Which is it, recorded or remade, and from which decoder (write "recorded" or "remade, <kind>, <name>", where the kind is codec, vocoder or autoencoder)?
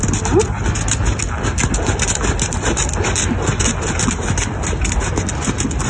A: recorded